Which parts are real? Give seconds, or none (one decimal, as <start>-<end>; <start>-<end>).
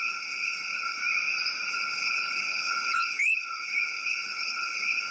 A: 1.0-1.7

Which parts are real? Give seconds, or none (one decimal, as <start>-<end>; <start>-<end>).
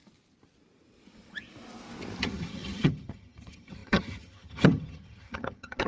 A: 0.0-2.2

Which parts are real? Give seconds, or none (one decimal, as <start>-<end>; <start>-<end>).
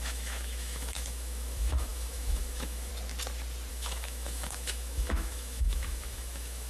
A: 2.9-3.7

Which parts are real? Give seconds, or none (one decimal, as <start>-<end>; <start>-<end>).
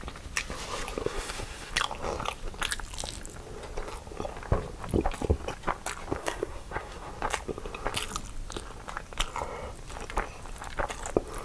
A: 0.0-1.0; 1.7-6.2; 7.1-11.4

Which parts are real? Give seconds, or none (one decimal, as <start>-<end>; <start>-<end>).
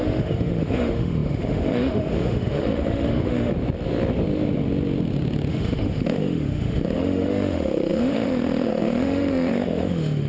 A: 3.5-5.5